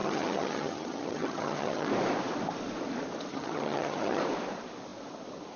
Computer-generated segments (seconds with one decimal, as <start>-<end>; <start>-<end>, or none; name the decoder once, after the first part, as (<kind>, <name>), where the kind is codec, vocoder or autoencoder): 0.0-1.9 (vocoder, HiFi-GAN); 3.3-4.2